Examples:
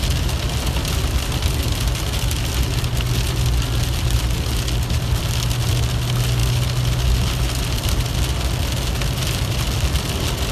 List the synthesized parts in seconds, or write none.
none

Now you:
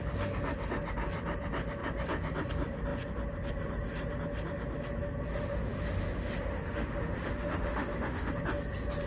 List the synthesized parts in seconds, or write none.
5.3-8.3 (autoencoder, DAC-VAE)

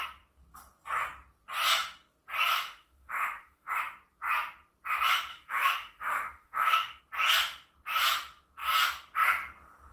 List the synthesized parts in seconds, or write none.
2.5-3.7 (autoencoder, DAC-VAE); 5.3-7.0

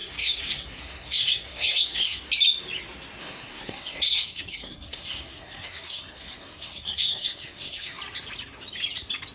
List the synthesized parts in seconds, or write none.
0.0-2.3 (codec, SNAC); 3.2-8.0

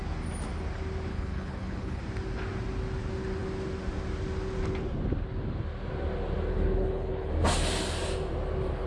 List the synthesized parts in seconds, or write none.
1.1-2.0 (codec, HILCodec); 6.5-7.3

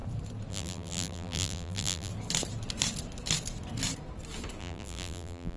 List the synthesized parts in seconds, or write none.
0.5-2.1 (vocoder, BigVGAN v2); 4.6-5.6